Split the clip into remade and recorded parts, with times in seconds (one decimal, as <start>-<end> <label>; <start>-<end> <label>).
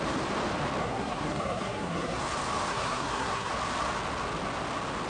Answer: 0.0-0.8 recorded; 0.8-2.2 remade; 2.2-2.7 recorded; 2.7-3.5 remade; 3.5-5.1 recorded